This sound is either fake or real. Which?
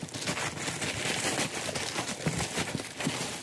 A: real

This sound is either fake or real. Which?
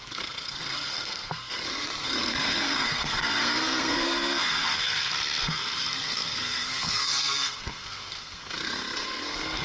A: fake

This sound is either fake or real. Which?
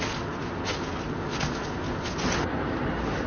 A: real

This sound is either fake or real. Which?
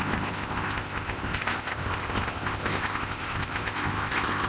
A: fake